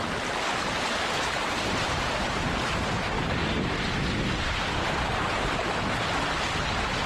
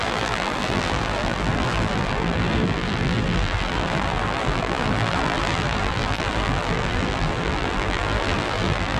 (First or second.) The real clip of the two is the first